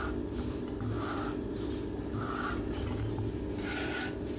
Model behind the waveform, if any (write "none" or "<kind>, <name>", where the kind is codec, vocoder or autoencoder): none